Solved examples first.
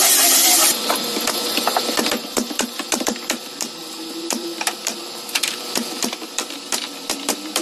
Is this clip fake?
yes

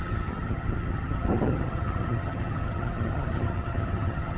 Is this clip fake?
yes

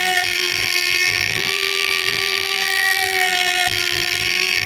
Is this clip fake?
yes